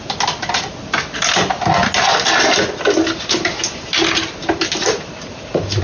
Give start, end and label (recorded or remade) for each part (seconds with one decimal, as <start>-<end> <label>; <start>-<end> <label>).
0.0-5.8 recorded